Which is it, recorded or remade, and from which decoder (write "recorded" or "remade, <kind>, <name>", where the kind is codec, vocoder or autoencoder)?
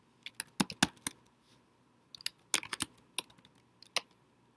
recorded